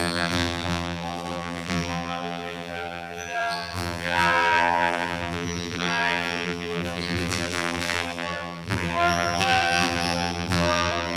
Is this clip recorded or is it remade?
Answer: remade